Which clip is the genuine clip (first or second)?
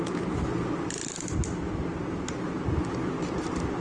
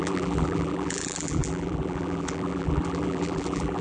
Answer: first